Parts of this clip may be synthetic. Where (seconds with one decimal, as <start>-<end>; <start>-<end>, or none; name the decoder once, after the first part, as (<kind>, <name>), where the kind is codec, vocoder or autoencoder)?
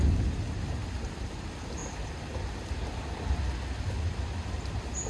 0.0-1.8 (vocoder, BigVGAN v2)